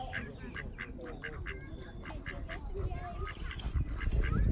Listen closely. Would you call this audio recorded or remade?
recorded